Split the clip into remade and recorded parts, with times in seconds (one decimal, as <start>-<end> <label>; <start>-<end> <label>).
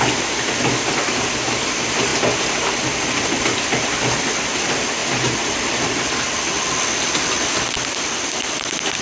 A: 0.0-9.0 recorded